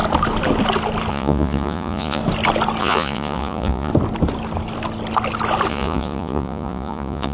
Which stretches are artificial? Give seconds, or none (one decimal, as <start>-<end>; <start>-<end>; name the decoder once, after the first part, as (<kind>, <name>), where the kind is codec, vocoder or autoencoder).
1.1-2.2 (vocoder, Vocos); 2.8-3.9; 5.7-7.3